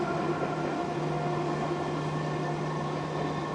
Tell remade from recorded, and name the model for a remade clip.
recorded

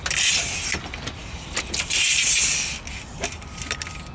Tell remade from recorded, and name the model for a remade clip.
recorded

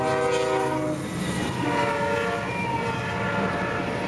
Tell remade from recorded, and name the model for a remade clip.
recorded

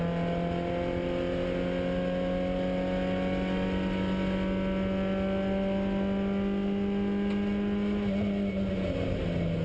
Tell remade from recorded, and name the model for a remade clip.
recorded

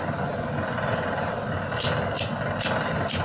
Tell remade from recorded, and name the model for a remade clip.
recorded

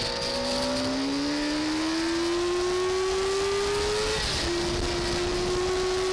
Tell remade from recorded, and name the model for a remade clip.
recorded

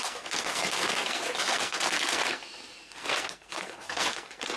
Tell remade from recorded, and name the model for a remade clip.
remade, codec, SNAC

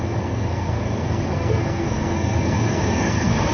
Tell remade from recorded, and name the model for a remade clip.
remade, codec, SNAC